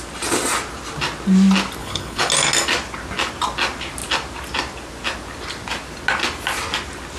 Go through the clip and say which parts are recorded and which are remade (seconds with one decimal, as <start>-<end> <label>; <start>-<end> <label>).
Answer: 0.0-1.8 recorded; 1.8-2.3 remade; 2.3-7.2 recorded